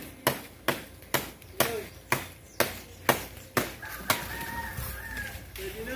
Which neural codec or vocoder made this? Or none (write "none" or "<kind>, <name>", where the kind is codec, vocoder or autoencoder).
none